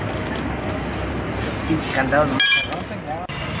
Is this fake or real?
real